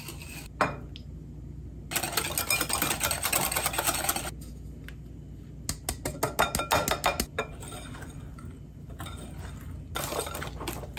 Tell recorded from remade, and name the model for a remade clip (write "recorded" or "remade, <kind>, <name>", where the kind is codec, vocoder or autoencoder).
recorded